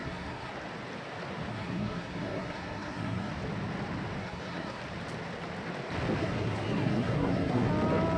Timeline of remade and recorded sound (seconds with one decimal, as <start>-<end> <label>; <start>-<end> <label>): 0.0-0.5 remade; 0.5-1.5 recorded; 1.5-3.3 remade; 3.3-4.2 recorded; 4.2-4.8 remade; 4.8-6.2 recorded; 6.2-7.7 remade; 7.7-8.2 recorded